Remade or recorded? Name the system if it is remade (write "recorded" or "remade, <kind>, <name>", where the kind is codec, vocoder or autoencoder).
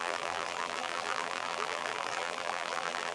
remade, vocoder, BigVGAN v2